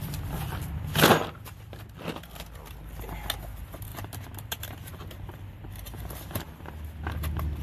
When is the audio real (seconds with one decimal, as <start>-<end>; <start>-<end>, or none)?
0.0-3.9; 5.4-7.6